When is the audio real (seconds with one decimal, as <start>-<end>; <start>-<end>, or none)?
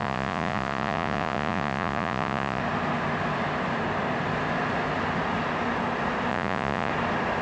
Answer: 2.6-6.3; 6.9-7.4